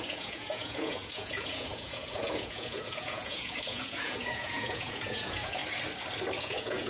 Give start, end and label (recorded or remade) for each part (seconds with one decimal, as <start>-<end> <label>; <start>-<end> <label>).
0.0-5.6 remade; 5.6-6.4 recorded; 6.4-6.9 remade